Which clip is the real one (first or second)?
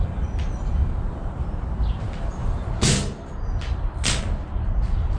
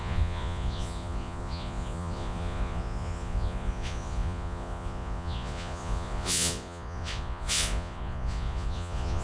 first